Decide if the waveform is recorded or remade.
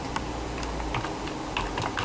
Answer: recorded